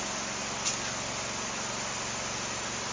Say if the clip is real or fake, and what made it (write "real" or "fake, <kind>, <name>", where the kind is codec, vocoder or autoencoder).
real